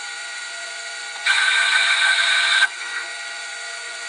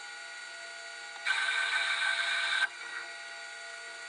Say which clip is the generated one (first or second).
first